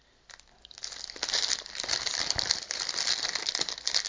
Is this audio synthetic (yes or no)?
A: no